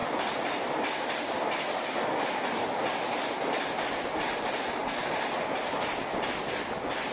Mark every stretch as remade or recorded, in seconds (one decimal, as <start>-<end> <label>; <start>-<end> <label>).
0.0-7.1 recorded